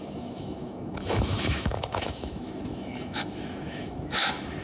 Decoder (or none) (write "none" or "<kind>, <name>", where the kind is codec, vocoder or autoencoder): autoencoder, DAC-VAE